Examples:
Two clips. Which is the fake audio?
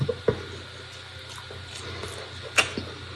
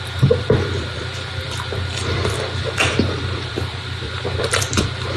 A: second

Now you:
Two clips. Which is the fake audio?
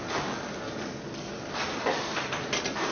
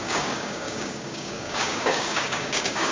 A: second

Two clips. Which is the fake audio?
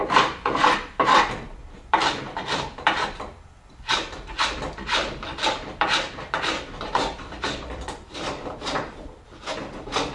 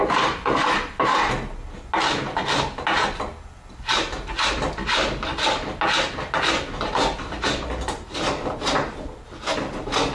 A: first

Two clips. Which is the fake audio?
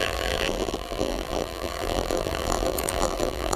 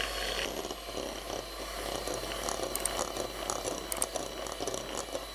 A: first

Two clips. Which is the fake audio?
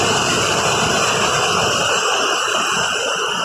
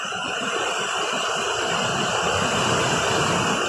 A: second